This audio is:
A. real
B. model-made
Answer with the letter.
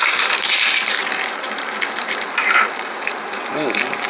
B